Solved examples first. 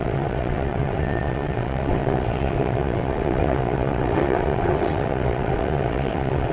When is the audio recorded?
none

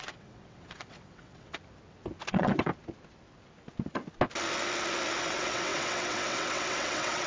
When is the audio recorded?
1.5-2.3; 2.7-5.2

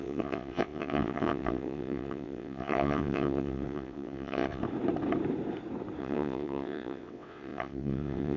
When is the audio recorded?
4.6-6.0